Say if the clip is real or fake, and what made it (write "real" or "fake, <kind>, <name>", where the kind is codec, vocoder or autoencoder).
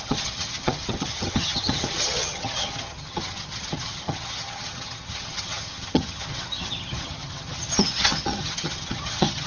fake, vocoder, HiFi-GAN